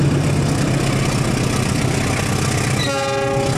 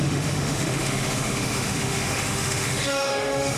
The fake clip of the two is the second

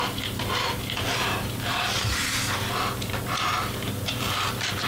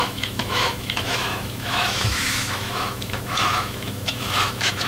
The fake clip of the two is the second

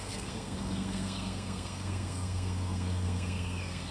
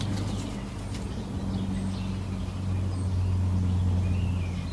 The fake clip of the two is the first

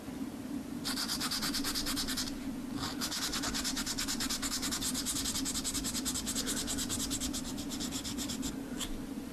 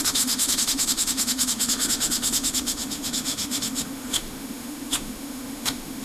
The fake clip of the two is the second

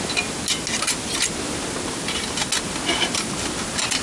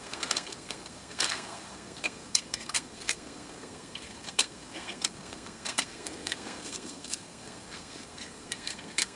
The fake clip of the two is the second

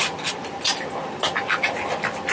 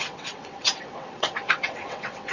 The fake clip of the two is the second